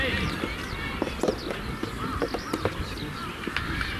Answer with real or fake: real